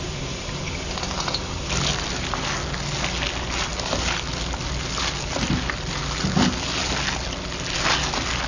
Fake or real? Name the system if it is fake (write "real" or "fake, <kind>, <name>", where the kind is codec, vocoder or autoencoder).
real